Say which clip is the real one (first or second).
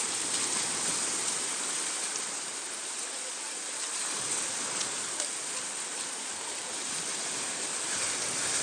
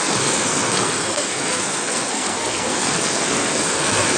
first